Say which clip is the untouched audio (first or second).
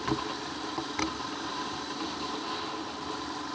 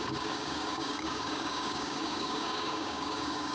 first